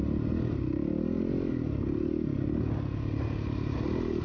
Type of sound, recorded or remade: recorded